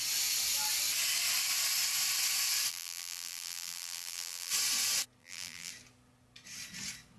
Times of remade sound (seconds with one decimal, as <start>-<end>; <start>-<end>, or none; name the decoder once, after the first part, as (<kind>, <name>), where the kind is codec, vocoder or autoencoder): 2.7-4.5 (vocoder, BigVGAN v2); 5.2-5.7